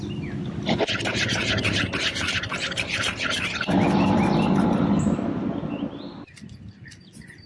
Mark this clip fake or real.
real